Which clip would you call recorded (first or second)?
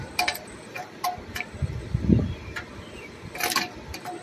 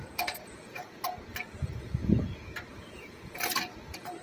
first